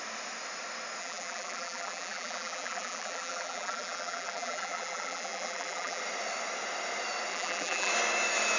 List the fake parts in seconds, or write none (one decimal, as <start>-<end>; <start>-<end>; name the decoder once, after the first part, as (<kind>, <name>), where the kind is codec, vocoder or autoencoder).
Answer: 1.0-6.0 (vocoder, BigVGAN v2); 7.3-7.9